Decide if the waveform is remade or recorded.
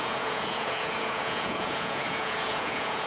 remade